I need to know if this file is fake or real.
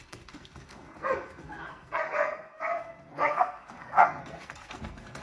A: fake